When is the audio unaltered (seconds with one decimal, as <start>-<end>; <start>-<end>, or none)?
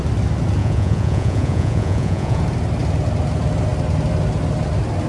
0.0-0.6; 2.4-5.1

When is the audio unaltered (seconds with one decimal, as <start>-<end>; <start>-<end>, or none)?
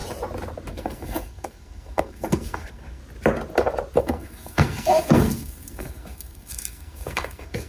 0.0-0.7; 3.0-4.0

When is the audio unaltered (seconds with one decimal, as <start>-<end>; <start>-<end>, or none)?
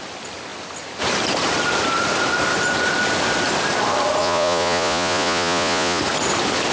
0.0-4.2; 6.0-6.7